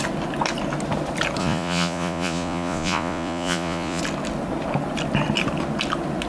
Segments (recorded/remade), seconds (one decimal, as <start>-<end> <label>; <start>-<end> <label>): 0.0-1.4 recorded; 1.4-4.0 remade; 4.0-6.3 recorded

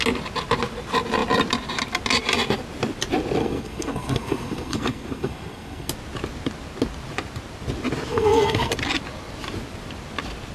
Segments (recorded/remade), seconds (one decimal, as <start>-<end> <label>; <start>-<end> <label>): 0.0-3.4 recorded; 3.4-5.9 remade; 5.9-8.1 recorded; 8.1-8.7 remade; 8.7-10.5 recorded

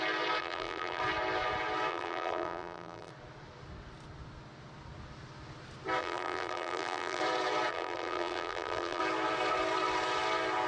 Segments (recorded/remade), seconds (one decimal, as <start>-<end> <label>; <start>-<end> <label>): 0.0-0.4 recorded; 0.4-1.0 remade; 1.0-1.9 recorded; 1.9-3.1 remade; 3.1-6.0 recorded; 6.0-7.2 remade; 7.2-7.7 recorded; 7.7-9.0 remade; 9.0-10.7 recorded